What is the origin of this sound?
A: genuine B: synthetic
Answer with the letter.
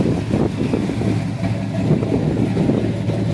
A